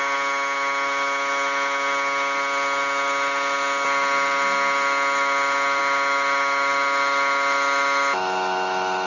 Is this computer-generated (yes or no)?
yes